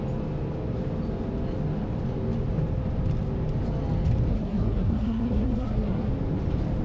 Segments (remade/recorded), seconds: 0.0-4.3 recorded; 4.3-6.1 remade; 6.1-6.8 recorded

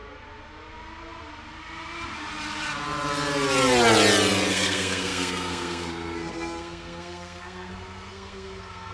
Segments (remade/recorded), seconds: 0.0-4.5 recorded; 4.5-8.9 remade

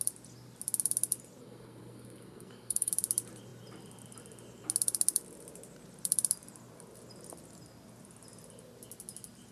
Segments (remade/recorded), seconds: 0.0-1.4 recorded; 1.4-2.9 remade; 2.9-9.5 recorded

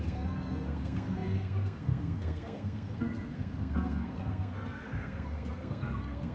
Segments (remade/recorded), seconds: 0.0-6.3 remade

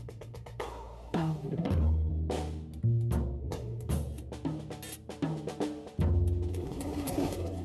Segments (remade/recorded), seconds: 0.0-2.1 remade; 2.1-3.4 recorded; 3.4-3.9 remade; 3.9-6.5 recorded; 6.5-7.6 remade